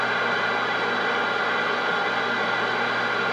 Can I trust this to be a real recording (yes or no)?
yes